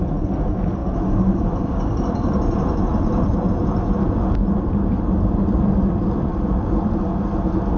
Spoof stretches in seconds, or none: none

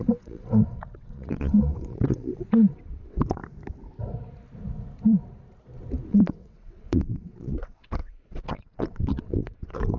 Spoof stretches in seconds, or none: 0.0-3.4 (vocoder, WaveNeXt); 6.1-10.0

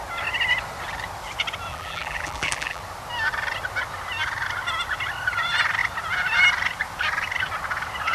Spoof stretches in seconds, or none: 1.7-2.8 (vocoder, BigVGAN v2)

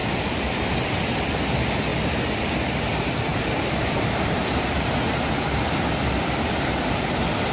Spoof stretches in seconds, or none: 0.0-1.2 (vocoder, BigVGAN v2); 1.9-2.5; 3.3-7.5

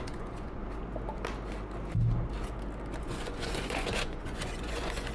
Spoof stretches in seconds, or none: 0.0-0.6 (vocoder, Vocos); 3.0-5.1